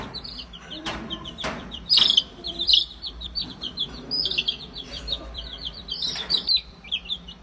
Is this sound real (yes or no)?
no